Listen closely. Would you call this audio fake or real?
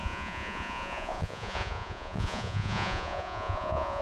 fake